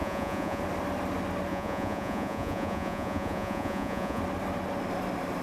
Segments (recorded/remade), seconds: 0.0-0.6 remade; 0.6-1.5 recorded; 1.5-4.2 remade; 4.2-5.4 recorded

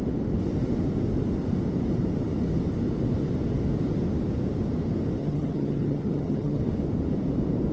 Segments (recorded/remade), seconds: 0.0-5.2 recorded; 5.2-6.6 remade; 6.6-7.7 recorded

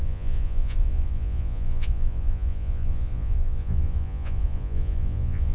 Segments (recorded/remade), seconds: 0.0-5.5 remade

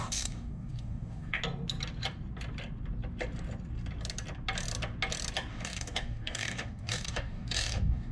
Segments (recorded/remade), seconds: 0.0-1.4 remade; 1.4-5.5 recorded; 5.5-8.1 remade

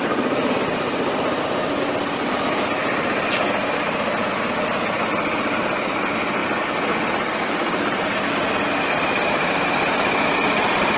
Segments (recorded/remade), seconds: 0.0-11.0 recorded

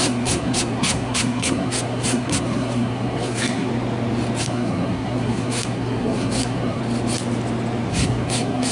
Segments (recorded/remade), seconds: 0.0-3.7 remade; 3.7-4.4 recorded; 4.4-6.8 remade; 6.8-7.9 recorded; 7.9-8.7 remade